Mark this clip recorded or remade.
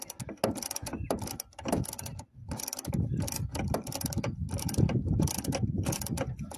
recorded